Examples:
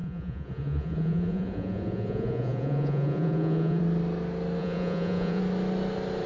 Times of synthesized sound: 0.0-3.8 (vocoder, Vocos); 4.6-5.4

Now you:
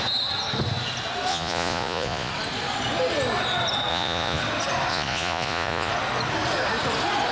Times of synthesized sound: 1.3-2.3 (vocoder, Vocos); 3.9-4.4; 4.9-5.9

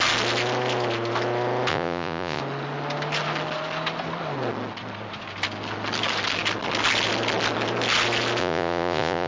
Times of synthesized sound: 1.7-2.4 (vocoder, Vocos); 8.4-9.3